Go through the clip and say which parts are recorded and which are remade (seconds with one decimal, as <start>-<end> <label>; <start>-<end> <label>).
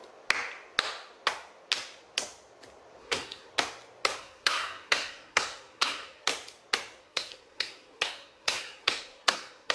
0.0-3.0 recorded; 3.0-3.5 remade; 3.5-4.2 recorded; 4.2-6.3 remade; 6.3-7.0 recorded; 7.0-9.7 remade